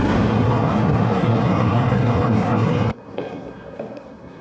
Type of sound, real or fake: fake